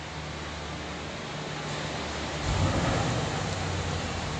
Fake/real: real